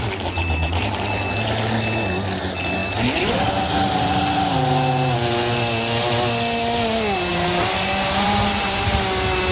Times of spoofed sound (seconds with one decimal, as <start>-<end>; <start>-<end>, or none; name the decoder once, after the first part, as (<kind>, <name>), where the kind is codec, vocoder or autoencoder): 7.3-8.9 (vocoder, BigVGAN v2)